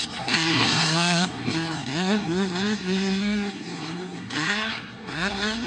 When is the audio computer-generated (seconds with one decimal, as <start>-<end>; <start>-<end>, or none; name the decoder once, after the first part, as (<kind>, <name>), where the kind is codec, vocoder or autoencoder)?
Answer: 0.0-5.7 (codec, SNAC)

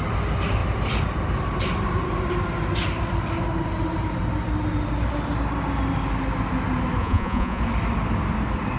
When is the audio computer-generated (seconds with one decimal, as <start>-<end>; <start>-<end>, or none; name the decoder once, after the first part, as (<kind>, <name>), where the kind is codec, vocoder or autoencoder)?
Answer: 7.0-7.6 (vocoder, Vocos)